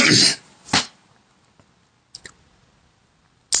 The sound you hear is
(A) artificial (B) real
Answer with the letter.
B